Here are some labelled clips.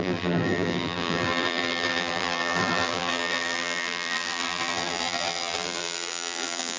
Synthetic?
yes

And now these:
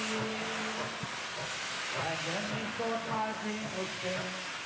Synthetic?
no